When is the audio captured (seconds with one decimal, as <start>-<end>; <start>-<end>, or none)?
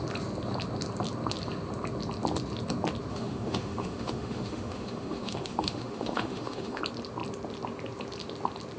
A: 0.0-3.1; 6.8-8.8